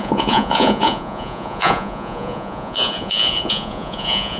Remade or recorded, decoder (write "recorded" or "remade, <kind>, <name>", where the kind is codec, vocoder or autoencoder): remade, vocoder, Vocos